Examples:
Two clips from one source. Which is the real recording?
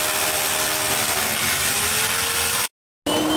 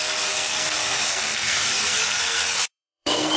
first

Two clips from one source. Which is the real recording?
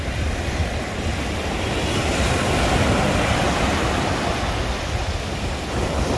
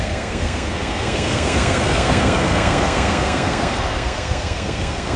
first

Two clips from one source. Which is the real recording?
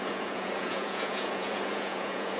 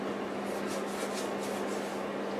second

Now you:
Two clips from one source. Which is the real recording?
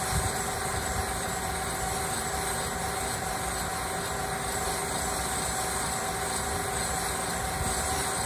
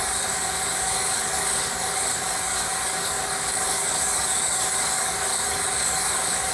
first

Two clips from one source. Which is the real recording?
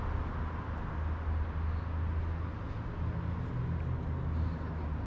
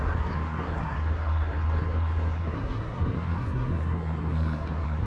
first